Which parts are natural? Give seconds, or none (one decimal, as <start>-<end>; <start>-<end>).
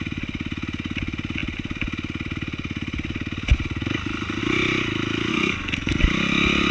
0.0-5.3; 6.0-6.7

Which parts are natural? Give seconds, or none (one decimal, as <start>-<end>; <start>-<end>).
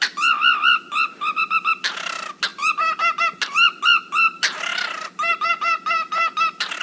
0.0-6.8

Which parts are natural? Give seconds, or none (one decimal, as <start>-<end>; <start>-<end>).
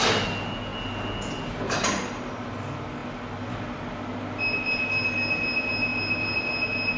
0.0-7.0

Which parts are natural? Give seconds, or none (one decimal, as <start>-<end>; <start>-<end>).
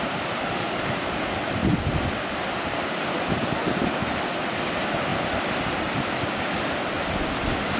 0.0-7.8